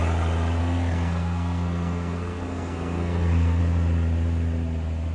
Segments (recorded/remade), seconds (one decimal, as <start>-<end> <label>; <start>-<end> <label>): 0.0-0.6 recorded; 0.6-3.6 remade; 3.6-5.1 recorded